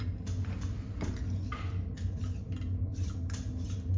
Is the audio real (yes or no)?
yes